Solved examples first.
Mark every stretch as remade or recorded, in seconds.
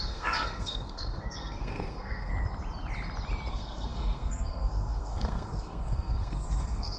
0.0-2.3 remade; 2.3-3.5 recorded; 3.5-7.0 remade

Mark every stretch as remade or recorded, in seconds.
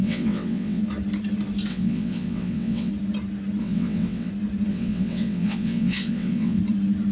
0.0-0.8 remade; 0.8-1.7 recorded; 1.7-2.9 remade; 2.9-3.6 recorded; 3.6-4.3 remade; 4.3-4.7 recorded; 4.7-6.6 remade; 6.6-7.1 recorded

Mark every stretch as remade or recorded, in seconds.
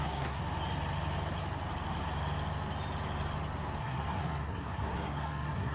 0.0-0.4 remade; 0.4-3.8 recorded; 3.8-5.7 remade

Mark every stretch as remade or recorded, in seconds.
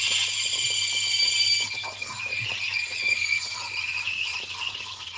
0.0-2.0 recorded; 2.0-5.2 remade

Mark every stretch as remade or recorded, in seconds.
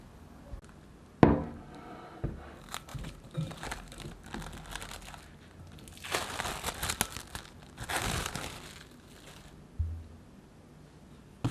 0.0-2.9 recorded; 2.9-4.1 remade; 4.1-11.5 recorded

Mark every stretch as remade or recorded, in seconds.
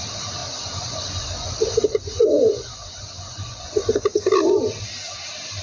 0.0-0.4 recorded; 0.4-3.8 remade; 3.8-5.6 recorded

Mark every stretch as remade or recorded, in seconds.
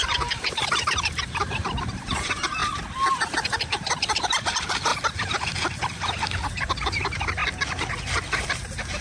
0.0-2.6 remade; 2.6-3.1 recorded; 3.1-4.9 remade; 4.9-6.5 recorded; 6.5-7.4 remade; 7.4-8.4 recorded; 8.4-9.0 remade